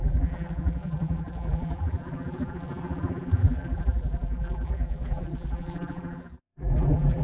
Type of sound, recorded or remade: remade